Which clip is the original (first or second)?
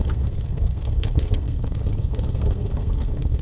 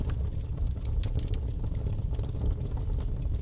second